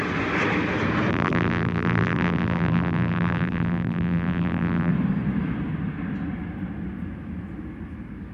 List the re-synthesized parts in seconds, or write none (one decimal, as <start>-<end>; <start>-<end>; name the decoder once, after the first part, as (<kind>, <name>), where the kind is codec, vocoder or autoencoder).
1.1-4.9 (vocoder, BigVGAN v2)